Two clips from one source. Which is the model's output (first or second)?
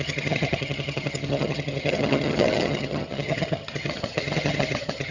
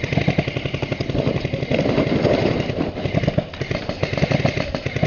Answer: first